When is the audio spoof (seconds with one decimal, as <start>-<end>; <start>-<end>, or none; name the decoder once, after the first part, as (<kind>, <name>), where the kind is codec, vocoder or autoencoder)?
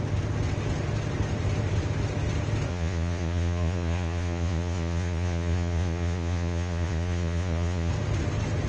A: 2.7-7.9 (vocoder, Vocos)